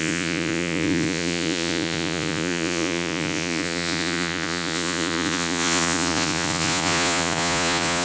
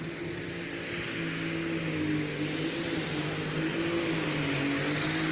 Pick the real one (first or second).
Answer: second